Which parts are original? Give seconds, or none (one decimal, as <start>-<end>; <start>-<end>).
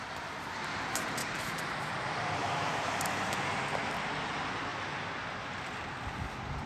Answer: 0.0-1.2; 1.7-2.4; 2.9-6.7